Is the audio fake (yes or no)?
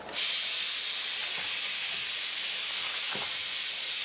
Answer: no